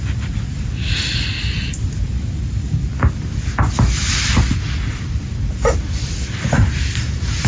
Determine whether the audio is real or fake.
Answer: real